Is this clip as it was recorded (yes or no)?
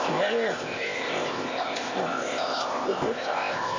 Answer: no